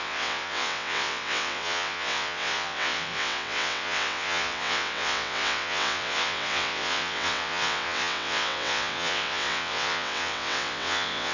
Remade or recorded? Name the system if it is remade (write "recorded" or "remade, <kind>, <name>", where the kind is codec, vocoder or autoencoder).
remade, vocoder, WaveNeXt